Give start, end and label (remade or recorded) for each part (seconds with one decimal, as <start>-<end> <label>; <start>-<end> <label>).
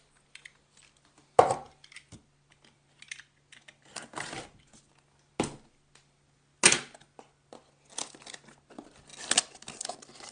0.0-10.3 recorded